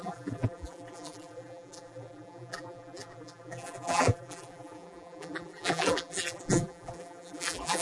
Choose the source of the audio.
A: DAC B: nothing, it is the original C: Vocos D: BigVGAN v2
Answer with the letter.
D